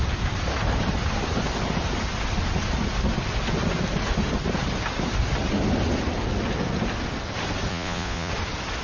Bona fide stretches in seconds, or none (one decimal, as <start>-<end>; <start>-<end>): 0.0-7.7; 8.3-8.8